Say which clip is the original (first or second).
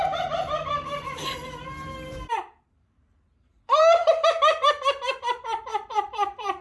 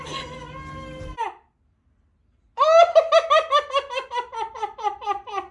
second